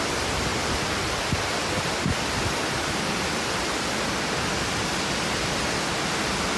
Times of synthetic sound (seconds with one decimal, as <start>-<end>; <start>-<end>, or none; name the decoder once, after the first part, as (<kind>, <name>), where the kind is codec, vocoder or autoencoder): none